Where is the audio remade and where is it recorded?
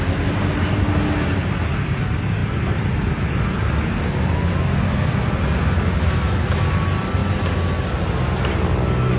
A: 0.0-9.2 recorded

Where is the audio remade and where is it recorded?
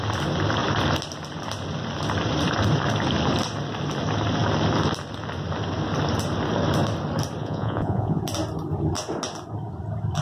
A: 0.0-7.4 recorded; 7.4-8.2 remade; 8.2-10.2 recorded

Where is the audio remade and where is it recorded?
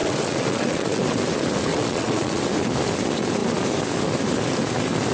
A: 0.0-1.0 remade; 1.0-1.7 recorded; 1.7-2.4 remade; 2.4-5.1 recorded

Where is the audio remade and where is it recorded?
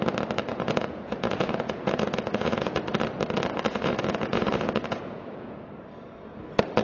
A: 0.0-0.5 recorded; 0.5-2.8 remade; 2.8-3.7 recorded; 3.7-5.7 remade; 5.7-6.8 recorded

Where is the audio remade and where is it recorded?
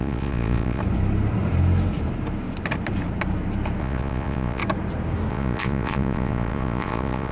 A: 0.0-0.8 remade; 0.8-3.8 recorded; 3.8-4.6 remade; 4.6-5.3 recorded; 5.3-7.3 remade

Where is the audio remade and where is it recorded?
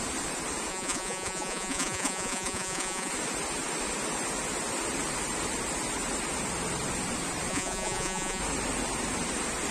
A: 0.0-0.7 recorded; 0.7-3.1 remade; 3.1-7.5 recorded; 7.5-8.4 remade; 8.4-9.7 recorded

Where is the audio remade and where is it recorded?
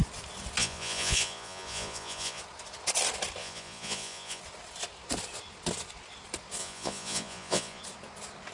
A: 0.0-0.6 recorded; 0.6-2.4 remade; 2.4-3.4 recorded; 3.4-4.4 remade; 4.4-6.6 recorded; 6.6-7.8 remade; 7.8-8.5 recorded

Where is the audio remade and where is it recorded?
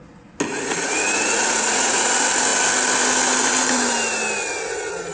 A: 0.0-0.5 recorded; 0.5-2.1 remade; 2.1-5.1 recorded